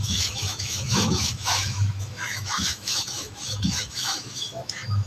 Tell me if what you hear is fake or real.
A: fake